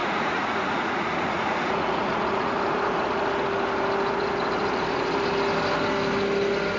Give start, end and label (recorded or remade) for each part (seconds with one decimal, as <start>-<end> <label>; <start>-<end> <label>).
0.0-2.5 remade; 2.5-6.8 recorded